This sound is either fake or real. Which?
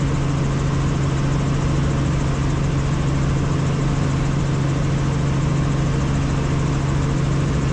real